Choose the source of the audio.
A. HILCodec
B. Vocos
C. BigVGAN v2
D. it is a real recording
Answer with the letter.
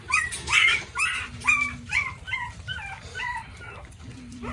C